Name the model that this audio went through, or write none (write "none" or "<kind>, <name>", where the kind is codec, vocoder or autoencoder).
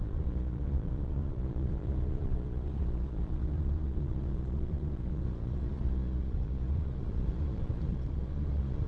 vocoder, Vocos